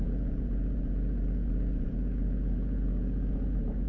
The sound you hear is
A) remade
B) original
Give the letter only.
A